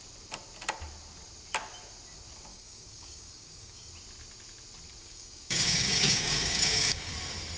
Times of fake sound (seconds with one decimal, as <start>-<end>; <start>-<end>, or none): 2.5-3.9; 5.0-7.1